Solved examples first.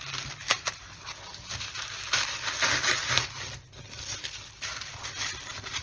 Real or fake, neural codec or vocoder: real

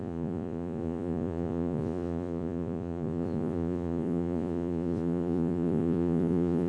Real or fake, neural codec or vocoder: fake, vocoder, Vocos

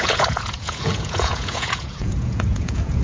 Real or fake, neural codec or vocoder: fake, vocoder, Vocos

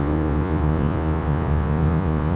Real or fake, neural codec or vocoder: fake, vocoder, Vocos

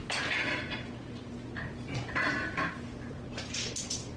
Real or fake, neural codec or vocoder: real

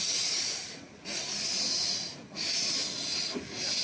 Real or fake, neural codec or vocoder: real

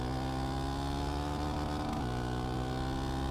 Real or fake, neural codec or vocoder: real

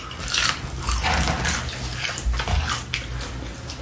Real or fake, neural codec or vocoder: real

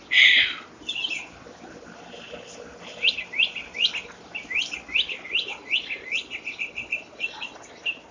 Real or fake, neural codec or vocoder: real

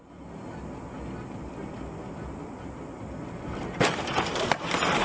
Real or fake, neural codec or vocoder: real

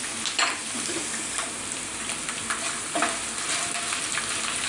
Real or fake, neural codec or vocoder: real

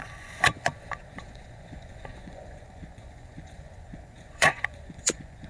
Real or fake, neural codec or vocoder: fake, vocoder, Vocos